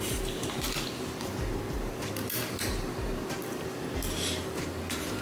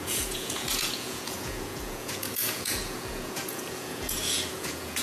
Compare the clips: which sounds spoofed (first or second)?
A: second